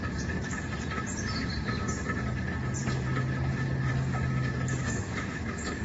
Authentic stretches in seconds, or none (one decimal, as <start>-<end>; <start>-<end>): 0.0-4.8